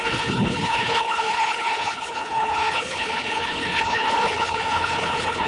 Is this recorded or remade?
remade